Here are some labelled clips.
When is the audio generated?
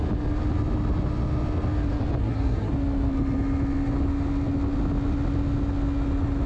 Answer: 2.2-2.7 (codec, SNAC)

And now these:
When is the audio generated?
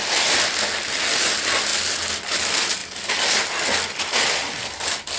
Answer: none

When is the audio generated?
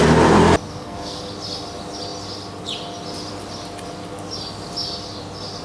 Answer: 0.7-1.2 (codec, SNAC)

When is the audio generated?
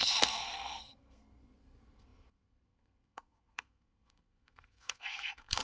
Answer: 0.0-5.6 (codec, SNAC)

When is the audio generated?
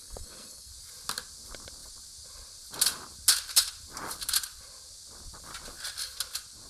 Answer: 0.0-0.7 (codec, SNAC)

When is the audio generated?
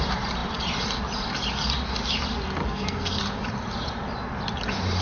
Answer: 2.6-3.2 (codec, SNAC)